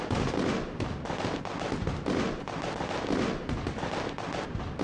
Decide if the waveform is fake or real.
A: real